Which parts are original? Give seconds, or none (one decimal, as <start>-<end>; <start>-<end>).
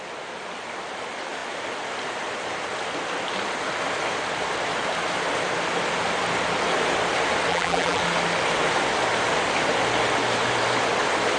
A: 0.0-7.5; 8.0-11.4